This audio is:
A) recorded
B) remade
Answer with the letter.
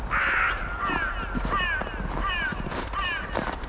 A